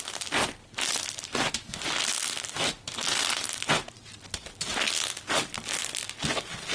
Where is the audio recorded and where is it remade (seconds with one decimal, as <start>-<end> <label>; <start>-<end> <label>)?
0.0-6.7 recorded